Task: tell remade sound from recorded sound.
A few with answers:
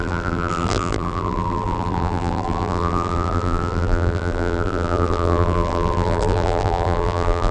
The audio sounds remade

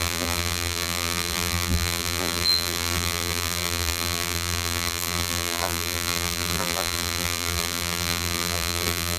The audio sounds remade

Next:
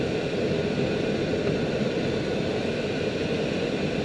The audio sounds recorded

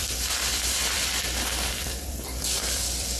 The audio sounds remade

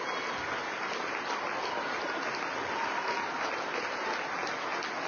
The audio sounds recorded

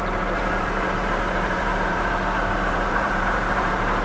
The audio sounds remade